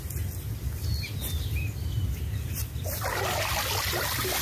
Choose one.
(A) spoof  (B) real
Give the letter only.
B